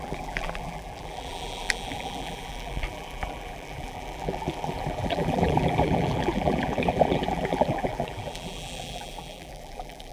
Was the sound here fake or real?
fake